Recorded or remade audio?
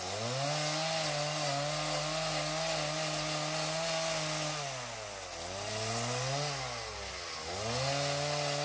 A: recorded